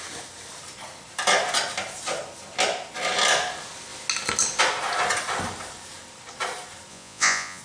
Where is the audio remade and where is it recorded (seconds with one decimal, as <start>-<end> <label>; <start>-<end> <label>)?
0.0-6.9 recorded; 6.9-7.6 remade